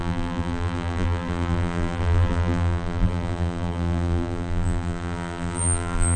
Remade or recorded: remade